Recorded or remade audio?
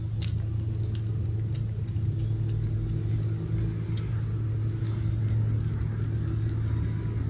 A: recorded